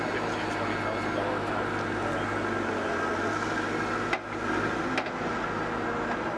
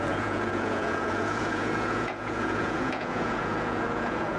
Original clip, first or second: first